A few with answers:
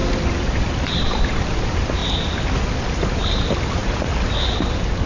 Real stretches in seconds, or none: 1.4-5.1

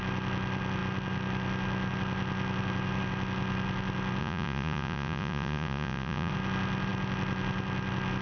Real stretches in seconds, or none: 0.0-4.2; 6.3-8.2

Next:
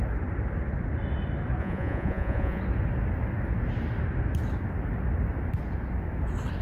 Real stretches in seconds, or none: 0.0-1.6; 2.6-6.6